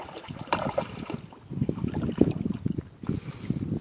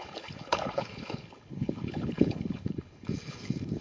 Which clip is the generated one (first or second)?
second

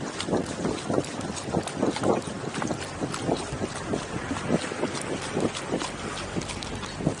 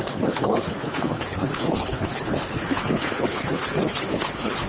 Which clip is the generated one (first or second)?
second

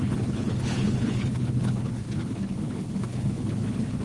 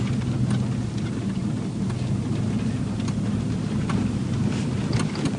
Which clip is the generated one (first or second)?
first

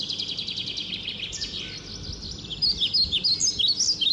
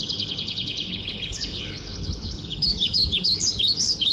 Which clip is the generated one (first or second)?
second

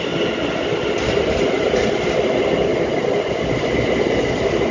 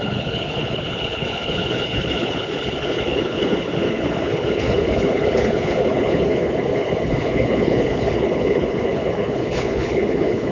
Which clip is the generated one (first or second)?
second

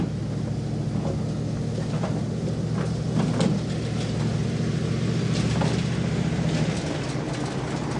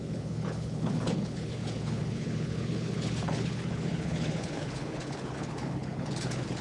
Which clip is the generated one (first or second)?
second